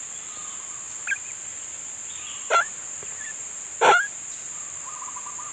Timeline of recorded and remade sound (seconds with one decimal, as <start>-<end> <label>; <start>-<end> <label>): 0.0-0.4 remade; 0.4-1.4 recorded; 1.4-5.5 remade